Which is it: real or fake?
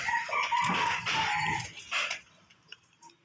real